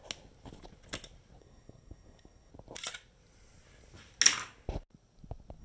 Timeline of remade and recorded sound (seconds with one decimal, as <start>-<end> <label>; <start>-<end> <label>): 0.0-1.4 recorded; 1.4-2.5 remade; 2.5-5.6 recorded